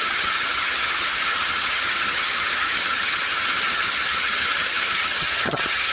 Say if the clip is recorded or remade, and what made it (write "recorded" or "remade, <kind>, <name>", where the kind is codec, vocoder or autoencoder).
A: remade, vocoder, HiFi-GAN